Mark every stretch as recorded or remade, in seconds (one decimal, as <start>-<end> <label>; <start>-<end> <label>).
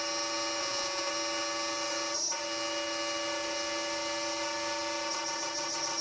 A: 0.0-0.6 recorded; 0.6-1.1 remade; 1.1-6.0 recorded